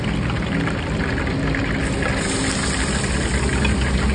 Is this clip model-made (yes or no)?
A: no